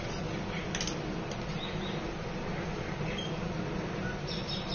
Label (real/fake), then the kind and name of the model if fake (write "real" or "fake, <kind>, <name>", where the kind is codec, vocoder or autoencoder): real